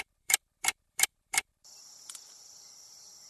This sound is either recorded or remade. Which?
remade